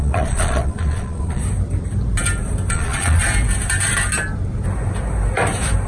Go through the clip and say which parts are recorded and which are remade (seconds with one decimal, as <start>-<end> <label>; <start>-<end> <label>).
0.0-1.4 remade; 1.4-2.7 recorded; 2.7-3.2 remade; 3.2-5.9 recorded